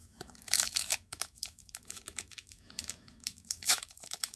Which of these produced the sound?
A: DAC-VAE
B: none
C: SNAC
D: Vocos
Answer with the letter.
A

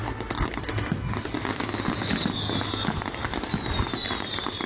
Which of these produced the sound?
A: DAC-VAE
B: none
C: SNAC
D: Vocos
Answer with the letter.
B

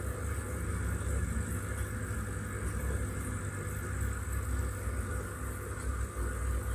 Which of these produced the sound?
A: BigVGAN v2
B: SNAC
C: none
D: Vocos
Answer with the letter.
C